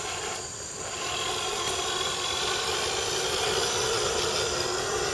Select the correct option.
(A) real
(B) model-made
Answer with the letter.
A